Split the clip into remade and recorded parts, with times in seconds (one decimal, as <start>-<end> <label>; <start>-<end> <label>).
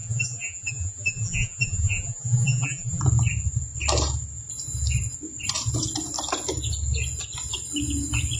0.0-3.0 remade; 3.0-8.4 recorded